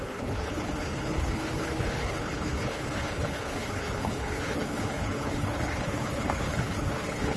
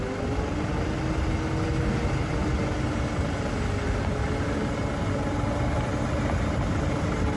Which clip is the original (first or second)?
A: second